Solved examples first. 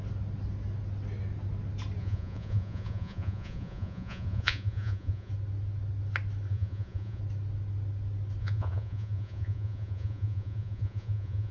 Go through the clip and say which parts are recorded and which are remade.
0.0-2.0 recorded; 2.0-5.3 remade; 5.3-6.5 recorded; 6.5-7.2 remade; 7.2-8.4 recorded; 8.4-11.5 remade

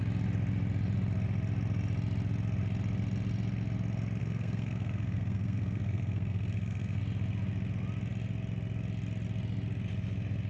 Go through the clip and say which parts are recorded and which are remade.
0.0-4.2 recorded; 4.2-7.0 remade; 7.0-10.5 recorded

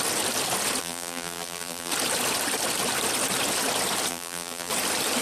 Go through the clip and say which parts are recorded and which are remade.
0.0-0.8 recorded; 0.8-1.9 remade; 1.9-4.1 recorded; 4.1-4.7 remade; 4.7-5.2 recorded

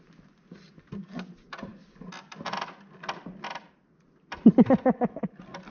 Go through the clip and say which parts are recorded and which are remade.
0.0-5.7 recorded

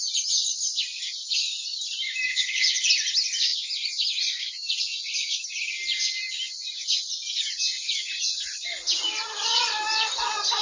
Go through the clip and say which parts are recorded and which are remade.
0.0-2.3 recorded; 2.3-2.9 remade; 2.9-10.6 recorded